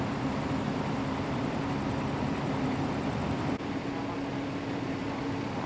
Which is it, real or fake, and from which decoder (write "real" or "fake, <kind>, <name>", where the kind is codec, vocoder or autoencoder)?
real